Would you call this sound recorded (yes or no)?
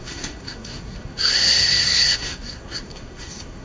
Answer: no